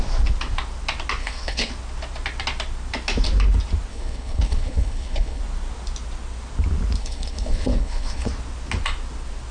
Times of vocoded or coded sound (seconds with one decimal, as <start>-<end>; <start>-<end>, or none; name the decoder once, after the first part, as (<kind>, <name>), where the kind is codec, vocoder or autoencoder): 1.2-1.7 (codec, HILCodec); 3.9-5.4; 7.0-8.3

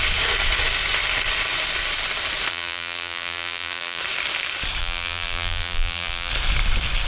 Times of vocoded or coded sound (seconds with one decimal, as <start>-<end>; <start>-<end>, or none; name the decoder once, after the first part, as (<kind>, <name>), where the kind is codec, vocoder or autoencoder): 2.5-4.0 (vocoder, BigVGAN v2); 4.8-6.3

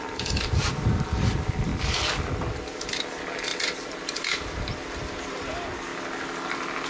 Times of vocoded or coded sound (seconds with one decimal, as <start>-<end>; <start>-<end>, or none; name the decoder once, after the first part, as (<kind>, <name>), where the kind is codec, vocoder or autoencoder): 1.7-3.0 (vocoder, BigVGAN v2); 3.5-4.6; 5.9-6.9

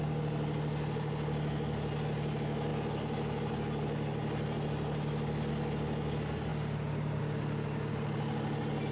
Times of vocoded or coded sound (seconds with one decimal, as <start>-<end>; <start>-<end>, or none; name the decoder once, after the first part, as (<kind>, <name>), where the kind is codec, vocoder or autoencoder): none

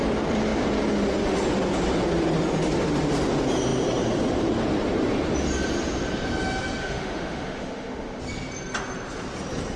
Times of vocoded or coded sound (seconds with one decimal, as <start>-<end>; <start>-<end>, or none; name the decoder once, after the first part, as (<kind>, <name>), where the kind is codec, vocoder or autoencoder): 6.8-8.2 (autoencoder, DAC-VAE)

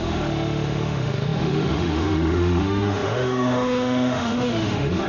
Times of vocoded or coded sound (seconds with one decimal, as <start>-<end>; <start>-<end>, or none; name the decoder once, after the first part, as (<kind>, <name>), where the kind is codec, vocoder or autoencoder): 0.0-5.1 (autoencoder, DAC-VAE)

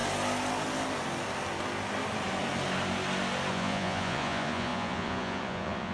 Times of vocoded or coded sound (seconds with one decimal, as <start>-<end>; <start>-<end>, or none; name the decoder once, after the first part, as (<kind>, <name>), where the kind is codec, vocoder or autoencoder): 3.5-5.9 (vocoder, Vocos)

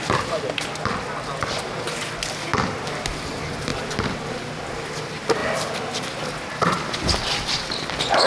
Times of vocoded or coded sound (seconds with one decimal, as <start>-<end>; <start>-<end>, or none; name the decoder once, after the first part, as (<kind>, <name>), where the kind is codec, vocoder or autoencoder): none